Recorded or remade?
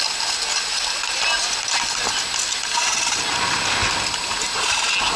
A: recorded